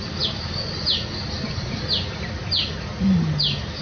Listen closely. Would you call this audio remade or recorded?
recorded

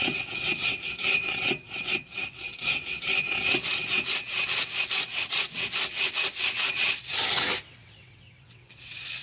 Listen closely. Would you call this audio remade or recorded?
remade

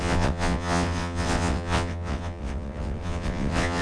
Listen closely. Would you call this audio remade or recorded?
remade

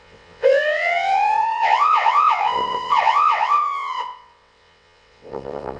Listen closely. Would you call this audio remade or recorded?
remade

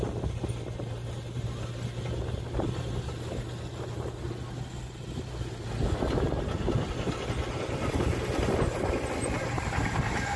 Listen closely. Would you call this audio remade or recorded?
recorded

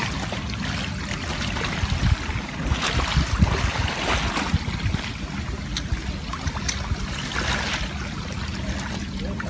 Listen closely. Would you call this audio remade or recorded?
recorded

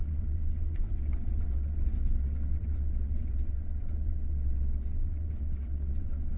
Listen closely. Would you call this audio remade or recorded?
remade